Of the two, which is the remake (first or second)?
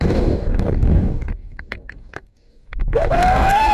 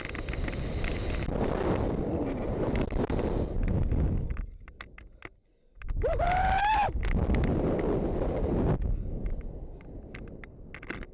first